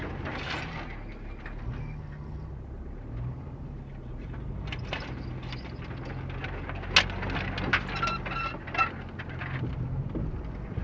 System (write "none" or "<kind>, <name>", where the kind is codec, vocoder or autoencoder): none